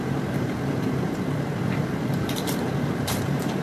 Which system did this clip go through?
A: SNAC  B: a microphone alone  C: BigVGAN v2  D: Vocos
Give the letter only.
C